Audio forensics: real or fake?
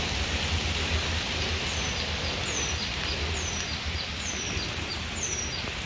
real